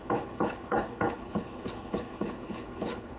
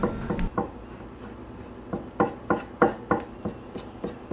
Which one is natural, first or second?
second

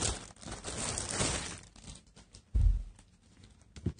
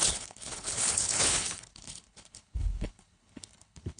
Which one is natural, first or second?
first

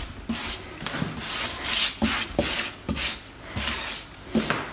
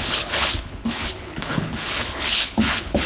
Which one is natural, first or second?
first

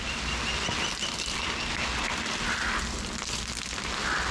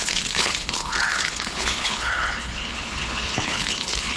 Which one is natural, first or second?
first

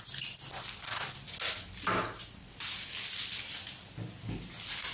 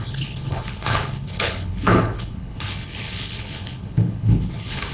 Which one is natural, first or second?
first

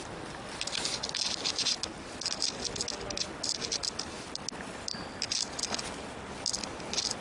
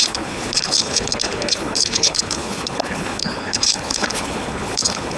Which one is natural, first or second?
first